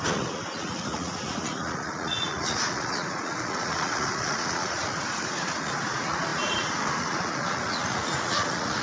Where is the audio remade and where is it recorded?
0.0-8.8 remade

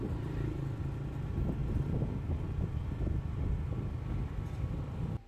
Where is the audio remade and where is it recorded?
0.0-5.3 recorded